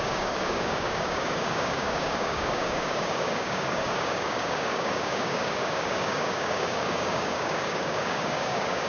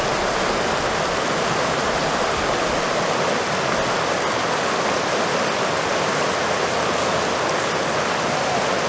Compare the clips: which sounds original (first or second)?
second